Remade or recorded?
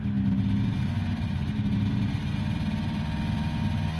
recorded